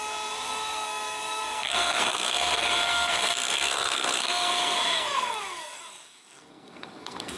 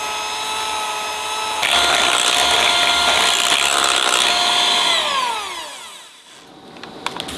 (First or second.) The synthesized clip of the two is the first